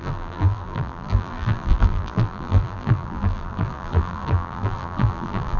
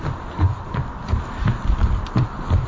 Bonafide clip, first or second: second